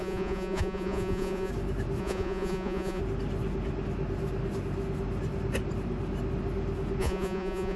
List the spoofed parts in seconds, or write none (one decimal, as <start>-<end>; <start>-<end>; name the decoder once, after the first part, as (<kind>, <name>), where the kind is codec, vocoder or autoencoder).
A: 0.0-1.5 (vocoder, Vocos); 2.0-3.0; 7.0-7.8